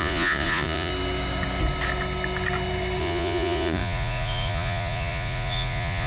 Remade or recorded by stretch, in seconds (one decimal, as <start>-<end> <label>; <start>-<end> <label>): 0.0-0.9 remade; 0.9-3.0 recorded; 3.0-6.1 remade